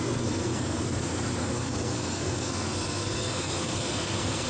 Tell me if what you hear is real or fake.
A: fake